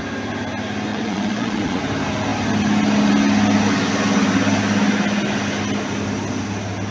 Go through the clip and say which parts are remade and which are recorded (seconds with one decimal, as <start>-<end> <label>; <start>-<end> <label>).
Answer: 0.0-0.9 recorded; 0.9-1.8 remade; 1.8-6.9 recorded